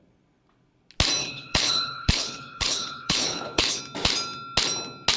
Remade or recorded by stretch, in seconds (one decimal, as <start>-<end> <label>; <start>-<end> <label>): 0.0-1.2 recorded; 1.2-3.8 remade; 3.8-5.2 recorded